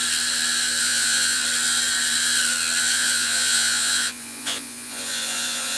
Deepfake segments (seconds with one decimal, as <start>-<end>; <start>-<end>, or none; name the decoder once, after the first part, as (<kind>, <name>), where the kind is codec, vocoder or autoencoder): 0.8-1.4 (vocoder, Vocos); 2.9-5.8